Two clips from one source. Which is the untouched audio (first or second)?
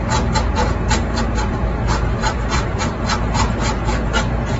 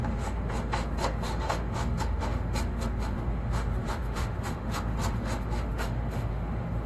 first